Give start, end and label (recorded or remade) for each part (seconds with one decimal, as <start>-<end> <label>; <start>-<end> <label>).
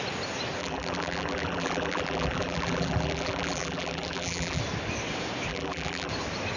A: 0.0-0.6 recorded; 0.6-4.6 remade; 4.6-5.5 recorded; 5.5-6.1 remade; 6.1-6.6 recorded